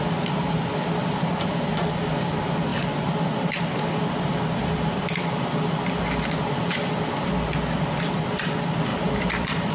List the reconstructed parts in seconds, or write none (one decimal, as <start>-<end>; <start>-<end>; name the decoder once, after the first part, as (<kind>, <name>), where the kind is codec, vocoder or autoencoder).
8.9-9.7 (vocoder, BigVGAN v2)